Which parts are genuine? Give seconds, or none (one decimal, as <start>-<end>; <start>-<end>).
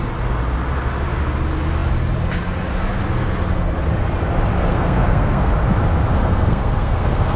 0.0-4.7; 5.5-6.2